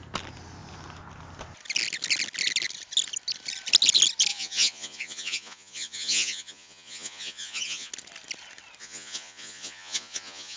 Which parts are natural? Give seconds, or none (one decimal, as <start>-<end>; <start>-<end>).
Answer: 0.0-4.3; 7.9-8.8